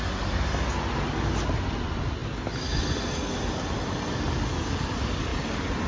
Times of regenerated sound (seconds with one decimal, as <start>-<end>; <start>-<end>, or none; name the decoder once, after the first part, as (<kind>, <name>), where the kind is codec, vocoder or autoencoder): none